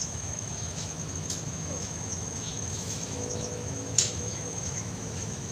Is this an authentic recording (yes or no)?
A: no